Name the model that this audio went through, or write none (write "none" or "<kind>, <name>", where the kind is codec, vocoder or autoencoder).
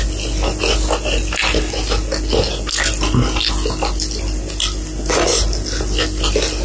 none